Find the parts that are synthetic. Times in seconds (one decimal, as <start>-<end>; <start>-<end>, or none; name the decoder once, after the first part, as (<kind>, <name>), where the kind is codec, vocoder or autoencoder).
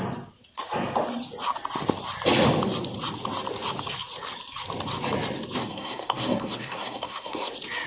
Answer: 5.6-7.5 (codec, SNAC)